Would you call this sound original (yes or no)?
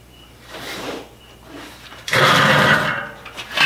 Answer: no